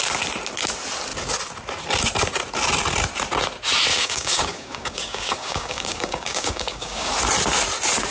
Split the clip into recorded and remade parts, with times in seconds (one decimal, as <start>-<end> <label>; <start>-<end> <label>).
0.0-3.9 recorded; 3.9-7.1 remade; 7.1-8.1 recorded